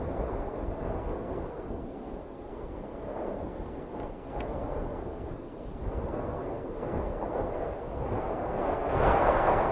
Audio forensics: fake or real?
fake